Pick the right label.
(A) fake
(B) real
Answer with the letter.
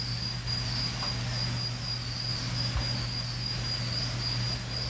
B